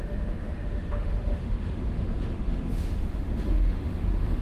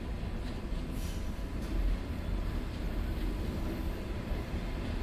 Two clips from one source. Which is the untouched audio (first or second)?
second